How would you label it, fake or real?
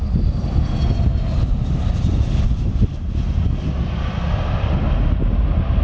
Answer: real